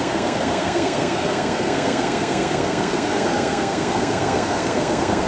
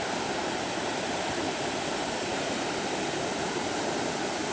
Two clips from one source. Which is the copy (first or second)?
first